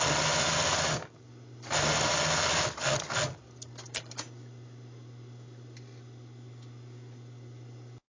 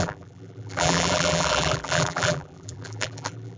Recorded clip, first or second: first